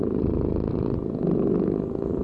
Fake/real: real